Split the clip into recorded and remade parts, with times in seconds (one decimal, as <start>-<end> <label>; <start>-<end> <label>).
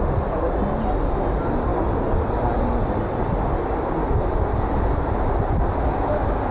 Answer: 0.0-6.5 recorded